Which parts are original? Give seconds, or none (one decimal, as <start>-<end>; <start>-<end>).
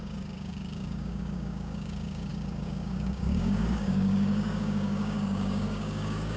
none